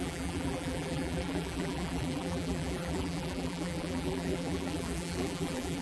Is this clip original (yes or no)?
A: no